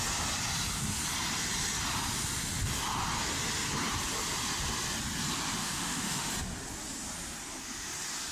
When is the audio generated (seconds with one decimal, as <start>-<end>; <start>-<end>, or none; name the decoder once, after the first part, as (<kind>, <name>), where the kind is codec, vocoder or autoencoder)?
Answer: 5.6-6.3 (autoencoder, DAC-VAE)